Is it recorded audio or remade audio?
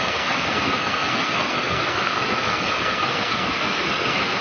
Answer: remade